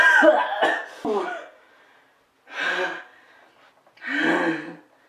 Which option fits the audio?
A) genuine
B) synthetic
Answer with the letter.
A